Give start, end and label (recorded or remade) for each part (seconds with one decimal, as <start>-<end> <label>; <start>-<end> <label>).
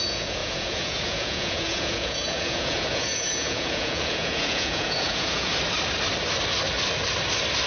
0.0-5.5 remade; 5.5-7.7 recorded